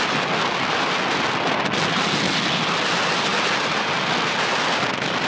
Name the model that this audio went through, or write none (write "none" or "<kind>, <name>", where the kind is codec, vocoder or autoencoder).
none